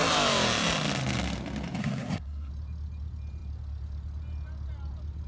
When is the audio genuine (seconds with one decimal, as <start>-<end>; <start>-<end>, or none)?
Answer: 0.0-1.8; 2.5-5.3